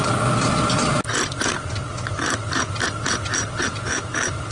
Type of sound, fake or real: real